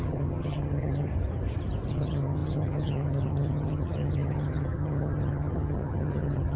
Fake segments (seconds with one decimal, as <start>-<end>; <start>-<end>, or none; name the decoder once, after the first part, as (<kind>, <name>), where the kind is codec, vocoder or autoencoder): 0.0-1.1 (vocoder, HiFi-GAN); 1.9-6.6